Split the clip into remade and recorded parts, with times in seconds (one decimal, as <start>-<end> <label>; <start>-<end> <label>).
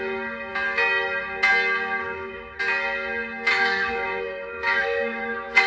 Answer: 0.0-2.0 recorded; 2.0-2.6 remade; 2.6-3.5 recorded; 3.5-5.7 remade